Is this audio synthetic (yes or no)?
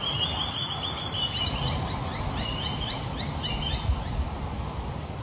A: no